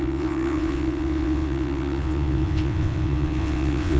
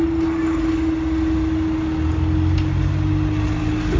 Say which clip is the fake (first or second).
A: first